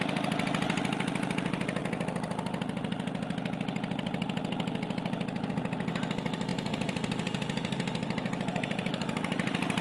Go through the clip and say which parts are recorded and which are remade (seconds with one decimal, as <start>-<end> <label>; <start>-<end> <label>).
0.0-6.5 recorded; 6.5-9.8 remade